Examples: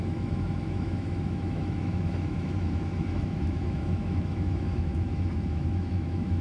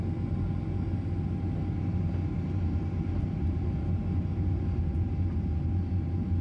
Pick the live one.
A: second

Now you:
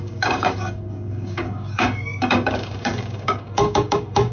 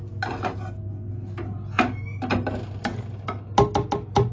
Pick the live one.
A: second